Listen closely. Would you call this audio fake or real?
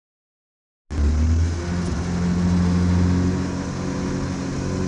real